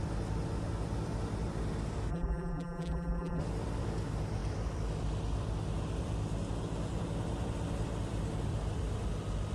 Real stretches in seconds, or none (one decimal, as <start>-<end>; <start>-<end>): 0.0-2.1; 3.4-9.5